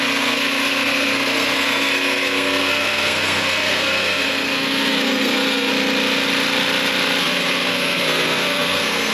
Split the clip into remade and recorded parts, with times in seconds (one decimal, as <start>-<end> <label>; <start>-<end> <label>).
0.0-5.7 remade; 5.7-7.2 recorded; 7.2-9.1 remade